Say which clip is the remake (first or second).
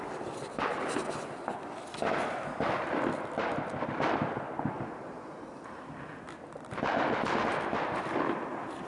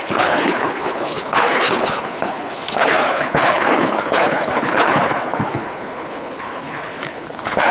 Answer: second